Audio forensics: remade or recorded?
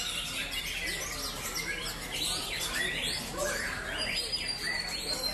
recorded